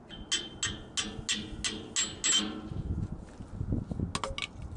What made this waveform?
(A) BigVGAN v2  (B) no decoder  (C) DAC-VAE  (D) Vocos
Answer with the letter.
B